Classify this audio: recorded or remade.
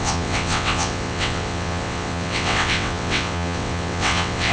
remade